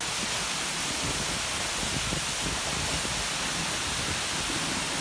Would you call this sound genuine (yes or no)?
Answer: yes